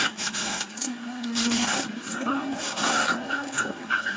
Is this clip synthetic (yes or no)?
yes